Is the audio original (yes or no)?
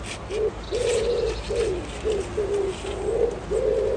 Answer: yes